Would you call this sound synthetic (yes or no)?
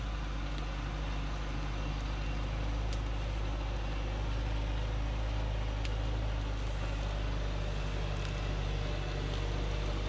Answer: no